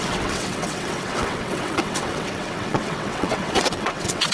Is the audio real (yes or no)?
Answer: no